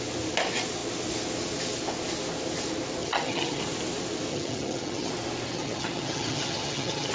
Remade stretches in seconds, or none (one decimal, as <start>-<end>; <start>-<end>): 3.0-3.6; 4.3-5.1; 5.5-7.1